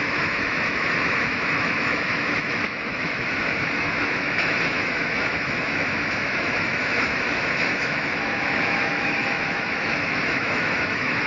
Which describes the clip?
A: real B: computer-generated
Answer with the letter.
B